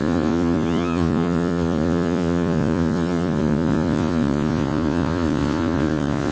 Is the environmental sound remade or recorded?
remade